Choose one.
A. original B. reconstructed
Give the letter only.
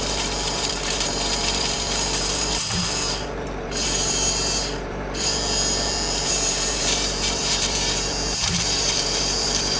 B